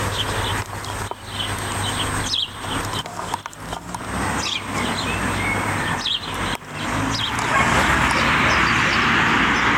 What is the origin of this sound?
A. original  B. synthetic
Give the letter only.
A